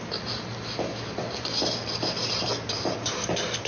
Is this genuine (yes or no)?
yes